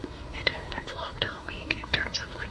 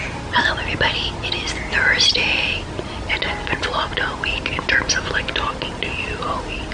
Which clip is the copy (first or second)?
first